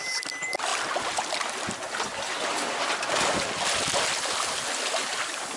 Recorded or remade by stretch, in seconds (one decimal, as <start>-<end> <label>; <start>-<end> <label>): 0.0-5.6 recorded